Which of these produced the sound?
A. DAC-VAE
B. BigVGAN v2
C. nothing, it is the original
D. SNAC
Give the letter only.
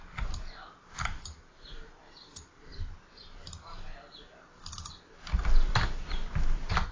B